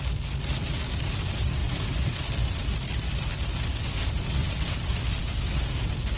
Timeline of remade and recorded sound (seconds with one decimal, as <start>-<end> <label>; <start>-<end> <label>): 0.0-4.4 recorded; 4.4-5.3 remade; 5.3-6.2 recorded